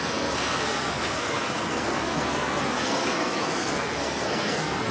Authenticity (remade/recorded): remade